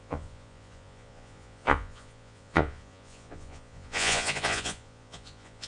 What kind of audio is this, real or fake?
fake